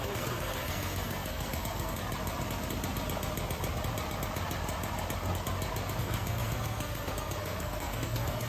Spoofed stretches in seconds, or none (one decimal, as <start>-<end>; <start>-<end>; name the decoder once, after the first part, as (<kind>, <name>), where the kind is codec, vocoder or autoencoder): 0.0-2.0 (codec, SNAC); 6.0-8.5